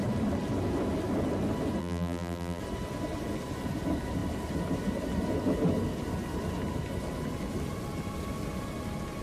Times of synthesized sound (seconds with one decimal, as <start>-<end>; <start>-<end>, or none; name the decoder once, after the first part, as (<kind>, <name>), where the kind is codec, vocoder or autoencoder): 1.8-2.6 (vocoder, BigVGAN v2)